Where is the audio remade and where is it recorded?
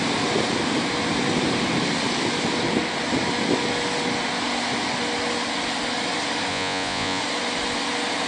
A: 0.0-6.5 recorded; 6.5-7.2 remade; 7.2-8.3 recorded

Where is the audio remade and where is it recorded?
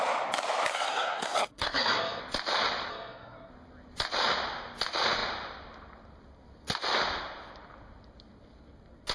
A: 0.0-0.7 recorded; 0.7-2.2 remade; 2.2-2.9 recorded; 2.9-3.5 remade; 3.5-9.1 recorded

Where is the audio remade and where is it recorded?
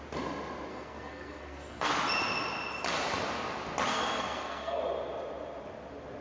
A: 0.0-0.7 recorded; 0.7-1.9 remade; 1.9-3.9 recorded; 3.9-4.8 remade; 4.8-6.2 recorded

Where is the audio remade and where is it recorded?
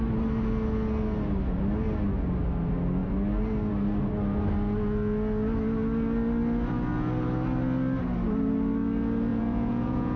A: 0.0-9.3 recorded; 9.3-10.2 remade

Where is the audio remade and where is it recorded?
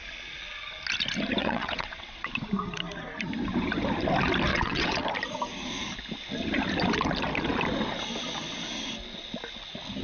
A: 0.0-1.4 recorded; 1.4-2.3 remade; 2.3-4.5 recorded; 4.5-5.0 remade; 5.0-10.0 recorded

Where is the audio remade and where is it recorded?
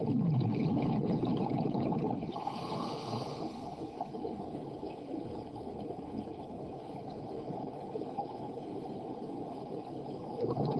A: 0.0-10.8 remade